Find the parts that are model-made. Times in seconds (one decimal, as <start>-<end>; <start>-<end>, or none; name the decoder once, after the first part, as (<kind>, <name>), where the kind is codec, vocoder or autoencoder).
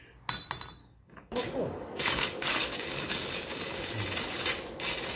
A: 0.8-3.9 (codec, DAC)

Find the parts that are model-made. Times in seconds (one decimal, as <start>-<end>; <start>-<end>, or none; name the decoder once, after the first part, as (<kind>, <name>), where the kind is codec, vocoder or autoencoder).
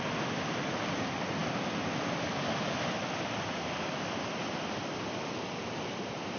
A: none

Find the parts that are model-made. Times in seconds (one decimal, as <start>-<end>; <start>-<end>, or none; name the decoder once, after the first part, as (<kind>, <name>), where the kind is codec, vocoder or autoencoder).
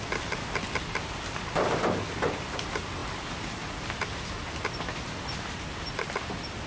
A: none